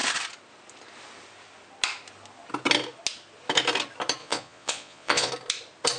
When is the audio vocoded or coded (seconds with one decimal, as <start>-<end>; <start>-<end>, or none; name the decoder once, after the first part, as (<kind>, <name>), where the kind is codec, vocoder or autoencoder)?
4.2-5.3 (vocoder, Vocos)